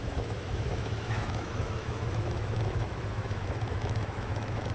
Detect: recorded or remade remade